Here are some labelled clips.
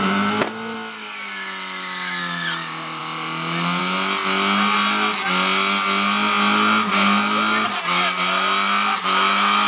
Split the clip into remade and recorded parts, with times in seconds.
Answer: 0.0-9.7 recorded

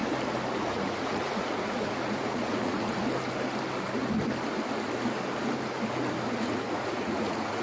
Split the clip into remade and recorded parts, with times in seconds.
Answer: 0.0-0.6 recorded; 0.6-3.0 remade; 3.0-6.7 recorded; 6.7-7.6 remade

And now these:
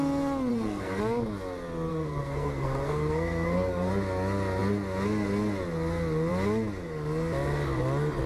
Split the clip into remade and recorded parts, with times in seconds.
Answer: 0.0-0.5 recorded; 0.5-1.0 remade; 1.0-1.9 recorded; 1.9-3.9 remade; 3.9-8.3 recorded

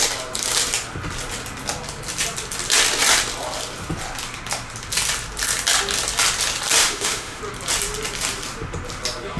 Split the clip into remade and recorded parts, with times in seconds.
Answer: 0.0-6.8 recorded; 6.8-7.4 remade; 7.4-9.4 recorded